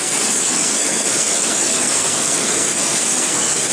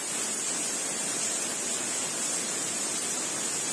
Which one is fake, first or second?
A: first